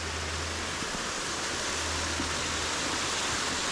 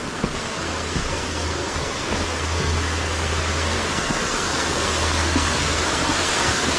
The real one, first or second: first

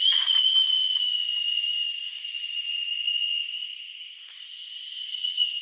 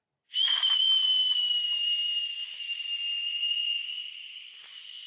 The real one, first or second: second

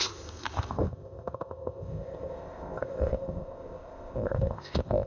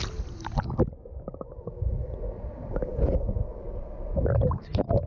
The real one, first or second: second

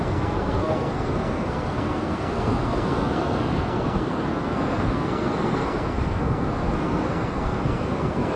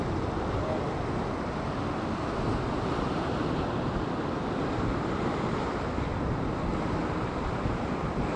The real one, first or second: second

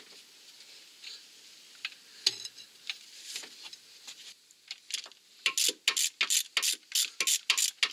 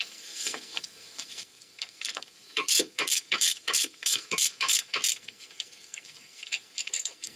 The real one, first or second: first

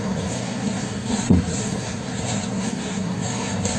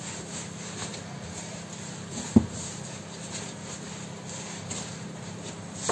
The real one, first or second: second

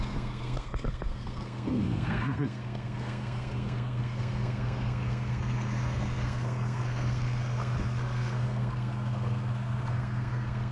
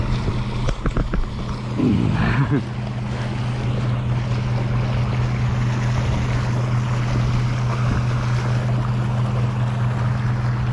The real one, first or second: second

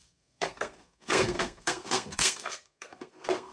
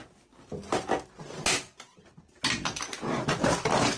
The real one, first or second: second